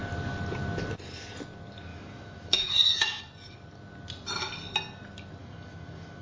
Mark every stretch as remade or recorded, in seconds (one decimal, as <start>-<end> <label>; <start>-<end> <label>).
0.0-1.9 recorded; 1.9-3.2 remade; 3.2-5.4 recorded; 5.4-6.2 remade